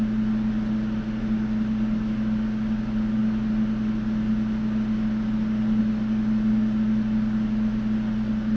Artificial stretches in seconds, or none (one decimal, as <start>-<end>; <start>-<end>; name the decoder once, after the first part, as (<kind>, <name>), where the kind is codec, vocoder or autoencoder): none